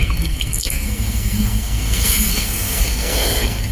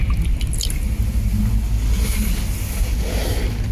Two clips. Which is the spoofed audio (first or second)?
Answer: first